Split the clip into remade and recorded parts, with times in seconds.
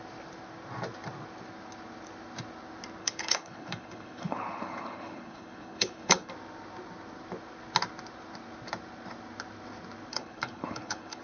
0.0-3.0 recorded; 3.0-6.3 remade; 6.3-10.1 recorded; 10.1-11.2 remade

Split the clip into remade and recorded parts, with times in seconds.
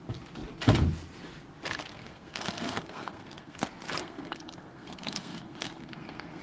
0.0-1.9 recorded; 1.9-3.6 remade; 3.6-4.0 recorded; 4.0-6.4 remade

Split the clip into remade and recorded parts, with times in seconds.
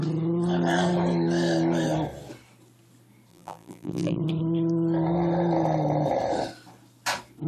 0.0-3.3 recorded; 3.3-4.2 remade; 4.2-7.5 recorded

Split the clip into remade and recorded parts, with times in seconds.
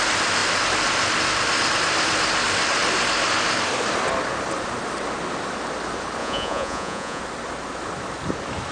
0.0-6.2 recorded; 6.2-7.2 remade; 7.2-8.7 recorded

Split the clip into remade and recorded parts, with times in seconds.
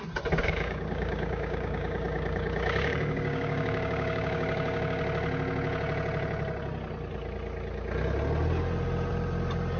0.0-0.4 recorded; 0.4-5.0 remade; 5.0-9.8 recorded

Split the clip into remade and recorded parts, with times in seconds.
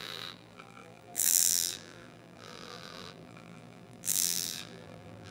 0.0-5.3 remade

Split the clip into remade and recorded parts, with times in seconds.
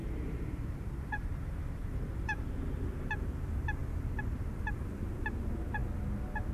0.0-2.5 remade; 2.5-6.5 recorded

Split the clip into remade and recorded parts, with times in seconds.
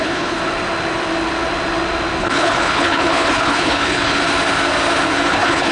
0.0-0.4 remade; 0.4-2.2 recorded; 2.2-4.2 remade; 4.2-5.3 recorded; 5.3-5.7 remade